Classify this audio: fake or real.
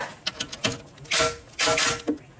real